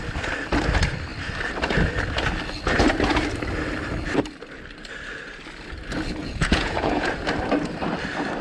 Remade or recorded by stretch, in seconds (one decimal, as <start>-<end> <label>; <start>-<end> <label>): 0.0-6.2 recorded; 6.2-7.1 remade; 7.1-8.4 recorded